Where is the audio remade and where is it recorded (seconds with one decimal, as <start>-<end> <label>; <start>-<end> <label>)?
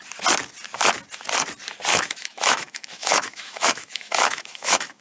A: 0.0-1.9 recorded; 1.9-5.0 remade